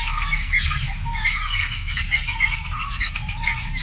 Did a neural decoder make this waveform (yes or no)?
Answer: yes